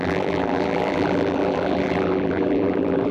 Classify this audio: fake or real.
fake